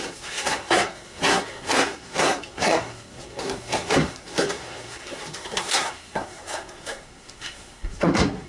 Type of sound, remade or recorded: remade